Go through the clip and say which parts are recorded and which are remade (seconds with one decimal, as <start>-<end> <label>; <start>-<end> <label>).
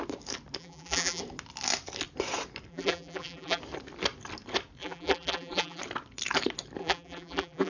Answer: 0.0-0.6 recorded; 0.6-1.2 remade; 1.2-2.7 recorded; 2.7-3.6 remade; 3.6-4.8 recorded; 4.8-5.8 remade; 5.8-6.8 recorded; 6.8-7.7 remade